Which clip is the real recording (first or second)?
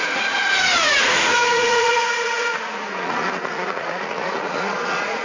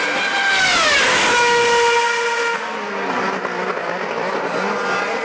second